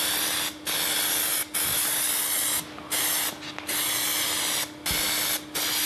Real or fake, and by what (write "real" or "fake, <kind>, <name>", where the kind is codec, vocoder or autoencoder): real